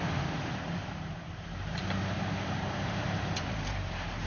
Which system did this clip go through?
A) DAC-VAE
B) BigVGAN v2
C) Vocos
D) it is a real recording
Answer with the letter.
B